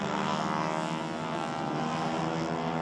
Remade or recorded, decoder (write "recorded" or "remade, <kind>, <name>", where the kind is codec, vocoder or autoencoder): recorded